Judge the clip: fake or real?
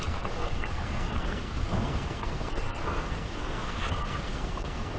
fake